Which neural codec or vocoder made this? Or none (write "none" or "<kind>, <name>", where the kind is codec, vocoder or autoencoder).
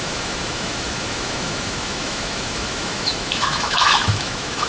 autoencoder, DAC-VAE